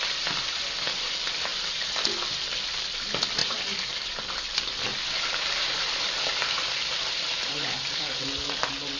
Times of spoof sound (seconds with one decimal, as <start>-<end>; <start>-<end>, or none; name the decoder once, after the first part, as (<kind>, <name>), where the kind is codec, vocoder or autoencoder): 1.5-2.0 (vocoder, BigVGAN v2); 3.4-4.2; 4.9-8.3